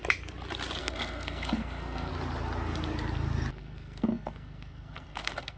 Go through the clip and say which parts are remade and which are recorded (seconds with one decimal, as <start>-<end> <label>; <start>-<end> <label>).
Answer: 0.0-0.8 recorded; 0.8-2.1 remade; 2.1-3.5 recorded; 3.5-5.6 remade